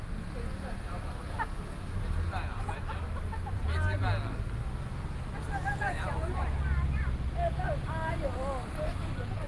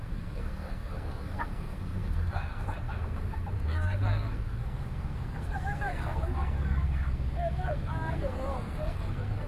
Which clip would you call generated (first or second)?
second